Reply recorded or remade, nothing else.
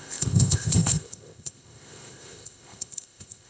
remade